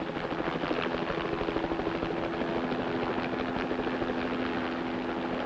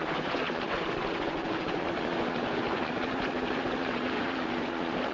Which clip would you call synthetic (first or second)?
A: second